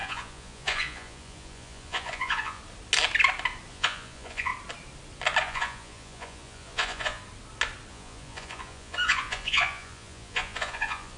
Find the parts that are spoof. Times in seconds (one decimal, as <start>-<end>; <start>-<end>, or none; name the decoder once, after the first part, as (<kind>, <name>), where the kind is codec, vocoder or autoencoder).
0.0-2.6 (vocoder, Vocos); 3.7-4.5; 5.4-7.2; 7.9-11.2